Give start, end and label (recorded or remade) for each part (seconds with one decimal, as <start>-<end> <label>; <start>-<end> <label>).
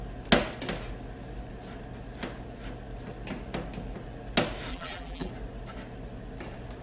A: 0.0-4.7 recorded; 4.7-5.3 remade; 5.3-6.8 recorded